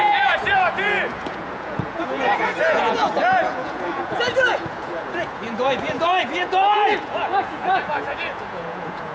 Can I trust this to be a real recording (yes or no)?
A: no